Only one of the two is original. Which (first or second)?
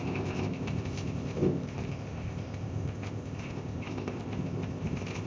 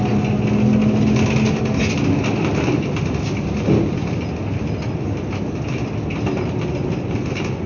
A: second